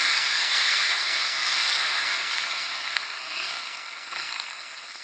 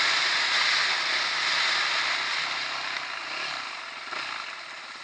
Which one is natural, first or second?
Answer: second